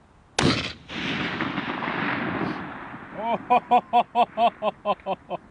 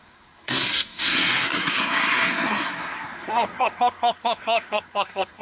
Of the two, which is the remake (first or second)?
second